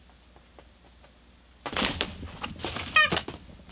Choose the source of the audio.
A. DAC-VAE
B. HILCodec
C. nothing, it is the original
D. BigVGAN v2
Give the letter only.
C